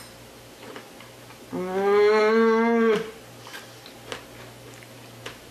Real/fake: real